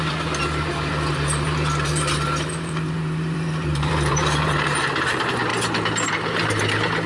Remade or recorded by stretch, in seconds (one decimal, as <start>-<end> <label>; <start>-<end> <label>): 0.0-5.5 remade; 5.5-6.1 recorded; 6.1-7.1 remade